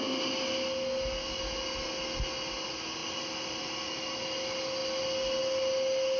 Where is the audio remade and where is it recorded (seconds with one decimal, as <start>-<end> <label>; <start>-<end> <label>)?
0.0-6.2 recorded